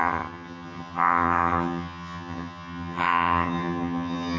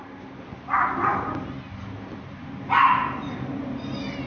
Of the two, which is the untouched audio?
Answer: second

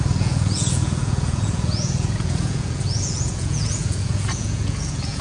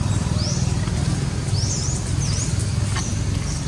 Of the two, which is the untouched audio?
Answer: second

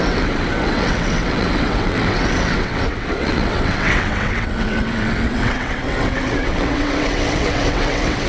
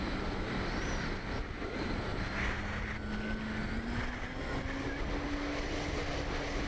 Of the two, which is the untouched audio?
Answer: second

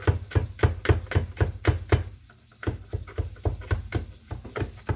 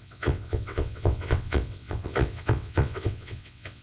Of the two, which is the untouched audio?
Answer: first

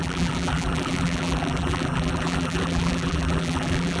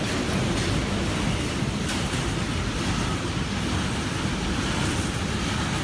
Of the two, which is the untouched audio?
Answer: second